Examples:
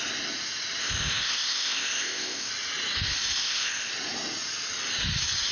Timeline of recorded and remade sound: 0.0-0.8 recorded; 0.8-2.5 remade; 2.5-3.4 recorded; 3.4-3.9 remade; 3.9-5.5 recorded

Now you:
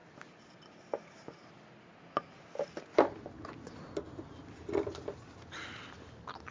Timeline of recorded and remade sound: 0.0-6.5 recorded

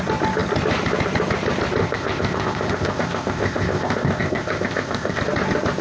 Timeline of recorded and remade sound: 0.0-1.8 recorded; 1.8-5.2 remade; 5.2-5.8 recorded

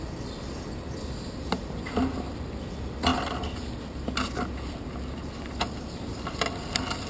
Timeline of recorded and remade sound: 0.0-7.1 recorded

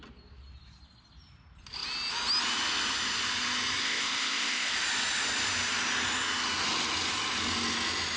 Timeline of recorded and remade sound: 0.0-3.8 recorded; 3.8-4.7 remade; 4.7-8.2 recorded

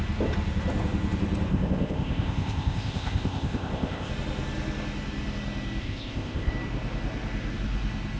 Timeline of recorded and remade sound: 0.0-1.5 recorded; 1.5-4.1 remade; 4.1-5.8 recorded; 5.8-6.5 remade; 6.5-8.2 recorded

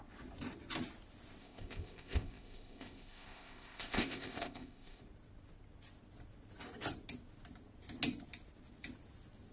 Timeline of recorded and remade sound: 0.0-1.4 recorded; 1.4-5.0 remade; 5.0-9.5 recorded